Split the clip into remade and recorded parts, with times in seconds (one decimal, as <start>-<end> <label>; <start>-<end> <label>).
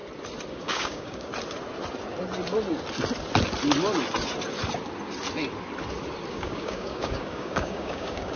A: 0.0-0.5 recorded; 0.5-1.3 remade; 1.3-6.3 recorded; 6.3-8.4 remade